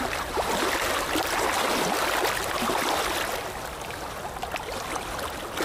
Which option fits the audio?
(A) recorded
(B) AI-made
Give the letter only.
A